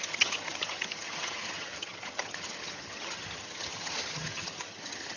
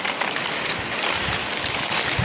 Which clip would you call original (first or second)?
second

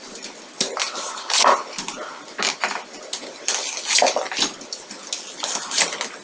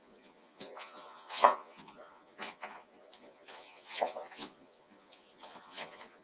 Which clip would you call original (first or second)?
first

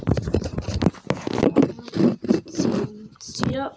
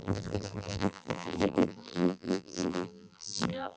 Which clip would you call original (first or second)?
first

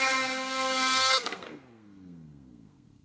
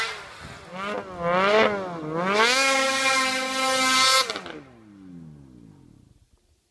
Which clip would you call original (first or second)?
second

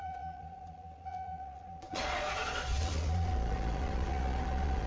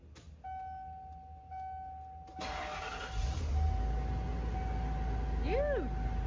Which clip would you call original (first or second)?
second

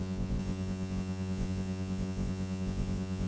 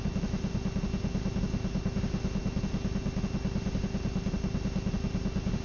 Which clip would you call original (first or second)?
second